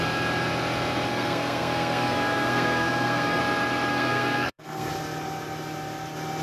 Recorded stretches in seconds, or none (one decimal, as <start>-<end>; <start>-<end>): 0.0-1.1; 3.4-3.9; 4.9-6.4